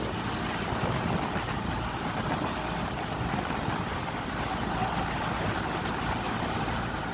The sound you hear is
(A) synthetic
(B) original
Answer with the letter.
B